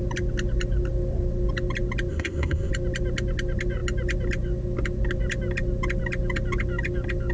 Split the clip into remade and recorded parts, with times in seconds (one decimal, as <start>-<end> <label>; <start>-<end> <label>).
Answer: 0.0-2.1 recorded; 2.1-2.7 remade; 2.7-7.3 recorded